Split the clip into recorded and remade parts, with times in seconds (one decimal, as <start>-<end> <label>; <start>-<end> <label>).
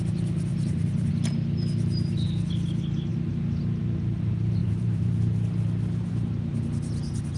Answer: 0.0-0.5 recorded; 0.5-1.1 remade; 1.1-3.1 recorded; 3.1-3.6 remade; 3.6-4.6 recorded; 4.6-5.1 remade; 5.1-7.4 recorded